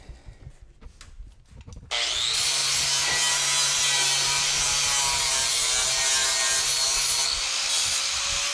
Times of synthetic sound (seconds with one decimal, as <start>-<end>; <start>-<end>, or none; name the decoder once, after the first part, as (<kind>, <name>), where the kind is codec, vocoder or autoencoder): none